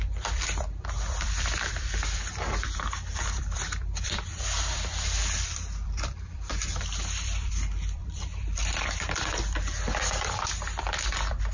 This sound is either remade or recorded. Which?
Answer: remade